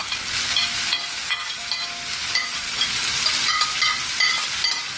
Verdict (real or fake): real